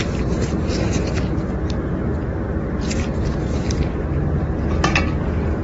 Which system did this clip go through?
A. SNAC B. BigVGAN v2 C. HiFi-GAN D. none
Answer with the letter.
D